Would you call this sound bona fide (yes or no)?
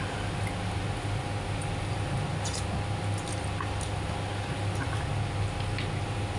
yes